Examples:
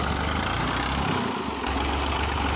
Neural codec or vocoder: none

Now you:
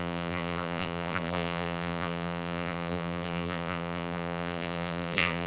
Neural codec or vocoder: vocoder, BigVGAN v2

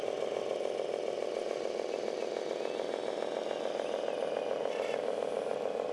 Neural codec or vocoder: none